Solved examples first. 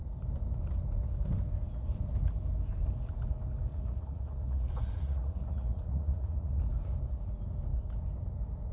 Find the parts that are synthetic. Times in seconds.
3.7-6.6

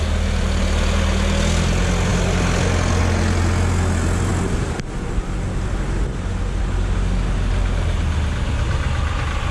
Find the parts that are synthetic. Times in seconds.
none

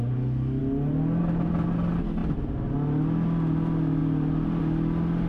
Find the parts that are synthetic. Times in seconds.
none

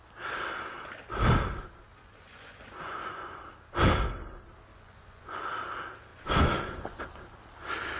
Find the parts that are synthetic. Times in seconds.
1.9-3.4; 4.7-5.4; 6.1-7.0

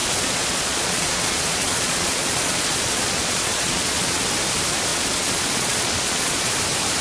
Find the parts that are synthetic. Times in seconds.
0.0-4.2; 4.9-6.5

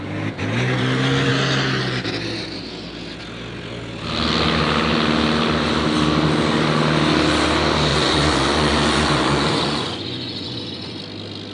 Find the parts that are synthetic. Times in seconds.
7.9-11.0